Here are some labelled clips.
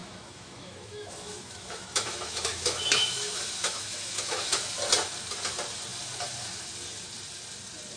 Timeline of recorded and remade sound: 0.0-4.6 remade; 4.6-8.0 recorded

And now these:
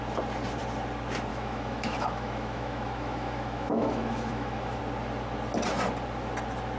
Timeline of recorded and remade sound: 0.0-1.3 recorded; 1.3-4.8 remade; 4.8-6.8 recorded

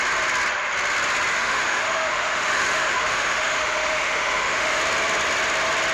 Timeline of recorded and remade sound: 0.0-1.3 recorded; 1.3-4.8 remade; 4.8-5.9 recorded

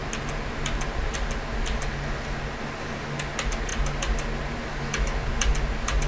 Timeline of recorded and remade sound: 0.0-6.1 recorded